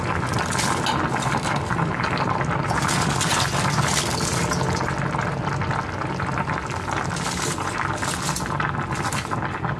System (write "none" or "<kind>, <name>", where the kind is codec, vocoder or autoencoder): none